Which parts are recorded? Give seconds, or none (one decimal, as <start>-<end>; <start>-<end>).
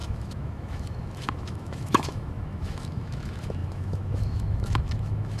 none